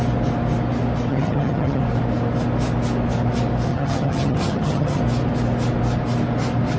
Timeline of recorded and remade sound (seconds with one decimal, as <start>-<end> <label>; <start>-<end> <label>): 0.0-1.1 recorded; 1.1-1.8 remade; 1.8-3.7 recorded; 3.7-5.0 remade; 5.0-6.8 recorded